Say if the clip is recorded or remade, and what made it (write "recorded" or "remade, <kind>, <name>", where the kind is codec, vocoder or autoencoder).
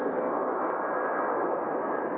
recorded